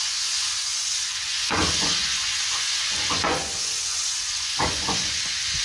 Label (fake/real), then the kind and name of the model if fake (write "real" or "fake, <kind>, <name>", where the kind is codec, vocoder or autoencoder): fake, vocoder, Vocos